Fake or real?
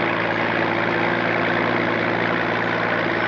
real